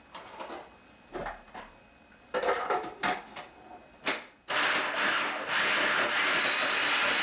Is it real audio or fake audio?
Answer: real